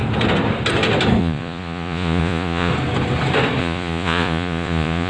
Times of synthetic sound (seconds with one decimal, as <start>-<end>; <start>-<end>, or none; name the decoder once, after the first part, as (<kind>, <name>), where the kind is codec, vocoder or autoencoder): 1.2-2.7 (vocoder, Vocos); 3.6-5.1